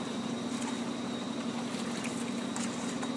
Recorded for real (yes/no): yes